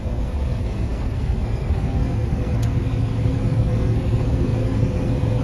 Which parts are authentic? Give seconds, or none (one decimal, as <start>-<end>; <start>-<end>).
none